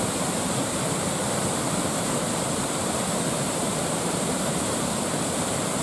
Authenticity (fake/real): fake